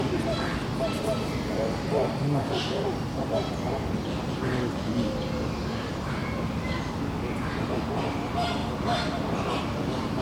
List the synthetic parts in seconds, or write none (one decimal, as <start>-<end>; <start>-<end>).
none